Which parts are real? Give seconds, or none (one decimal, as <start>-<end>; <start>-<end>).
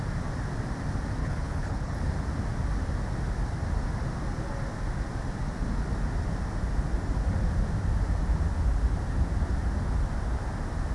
0.0-1.2; 2.0-10.9